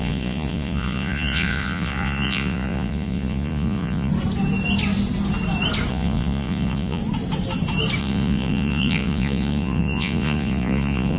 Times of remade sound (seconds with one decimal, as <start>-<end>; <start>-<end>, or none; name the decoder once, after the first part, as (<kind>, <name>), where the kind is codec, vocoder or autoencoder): 0.0-4.1 (vocoder, Vocos); 5.9-7.0; 8.0-11.2